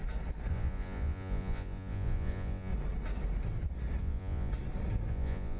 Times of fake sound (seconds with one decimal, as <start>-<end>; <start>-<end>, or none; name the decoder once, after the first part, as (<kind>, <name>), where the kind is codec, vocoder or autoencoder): 0.5-2.7 (vocoder, Vocos); 4.0-4.5; 5.1-5.6